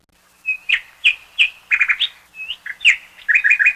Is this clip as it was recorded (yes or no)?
yes